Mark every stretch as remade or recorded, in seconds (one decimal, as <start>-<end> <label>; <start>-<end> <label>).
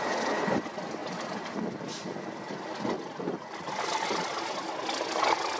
0.0-5.6 recorded